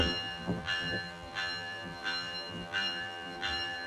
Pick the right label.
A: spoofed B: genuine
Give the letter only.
A